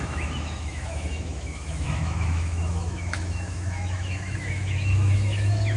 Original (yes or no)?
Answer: no